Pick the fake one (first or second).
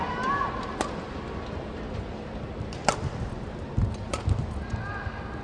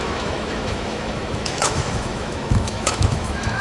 second